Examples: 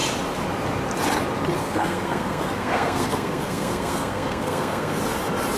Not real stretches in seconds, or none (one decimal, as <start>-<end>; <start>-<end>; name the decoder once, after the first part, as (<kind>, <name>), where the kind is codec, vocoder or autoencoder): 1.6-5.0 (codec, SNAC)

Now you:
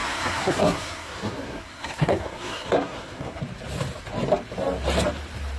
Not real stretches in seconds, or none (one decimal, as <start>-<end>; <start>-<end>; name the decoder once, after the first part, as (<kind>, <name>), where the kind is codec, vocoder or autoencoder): 0.0-3.4 (codec, SNAC)

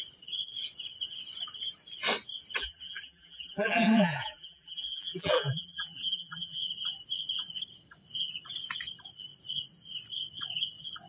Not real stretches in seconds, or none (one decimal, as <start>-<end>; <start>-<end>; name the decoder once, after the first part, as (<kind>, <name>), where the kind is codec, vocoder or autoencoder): 2.6-6.6 (vocoder, BigVGAN v2)

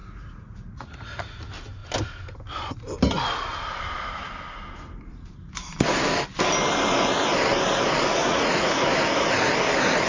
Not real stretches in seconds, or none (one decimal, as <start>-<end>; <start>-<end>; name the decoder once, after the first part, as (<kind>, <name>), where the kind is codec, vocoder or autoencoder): 0.0-1.4 (vocoder, Vocos); 8.2-8.7